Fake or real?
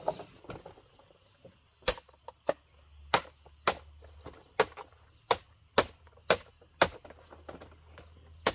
real